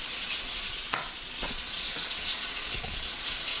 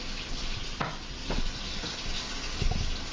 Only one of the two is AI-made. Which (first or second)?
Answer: first